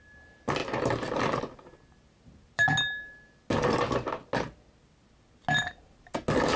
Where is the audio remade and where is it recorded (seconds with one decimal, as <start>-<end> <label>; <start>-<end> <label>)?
0.0-6.6 recorded